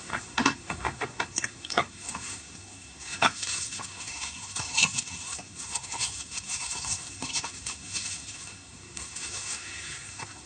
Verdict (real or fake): fake